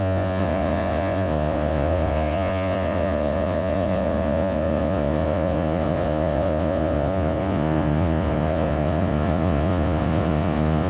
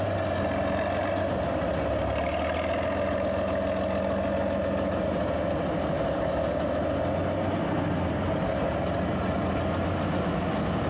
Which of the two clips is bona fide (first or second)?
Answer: second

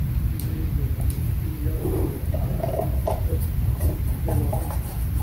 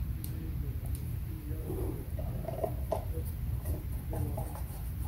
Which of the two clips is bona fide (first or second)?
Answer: second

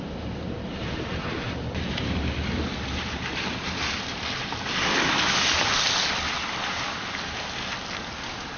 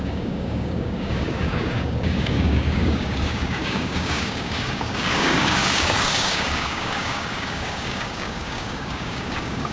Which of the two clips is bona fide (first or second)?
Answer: first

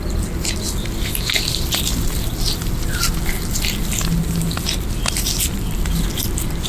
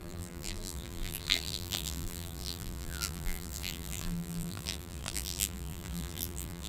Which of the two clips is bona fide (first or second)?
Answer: first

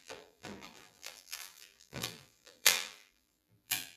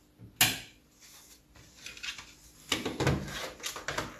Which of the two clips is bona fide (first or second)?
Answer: second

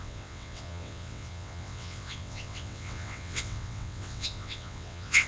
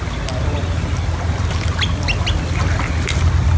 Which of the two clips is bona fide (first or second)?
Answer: second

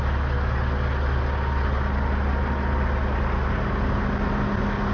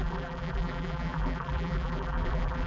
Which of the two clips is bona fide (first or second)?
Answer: first